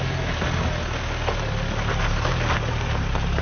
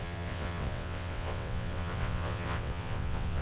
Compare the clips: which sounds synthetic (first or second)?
second